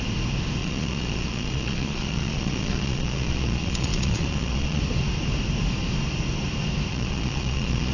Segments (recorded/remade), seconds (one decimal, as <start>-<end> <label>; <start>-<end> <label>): 0.0-0.6 recorded; 0.6-4.8 remade; 4.8-6.9 recorded; 6.9-7.9 remade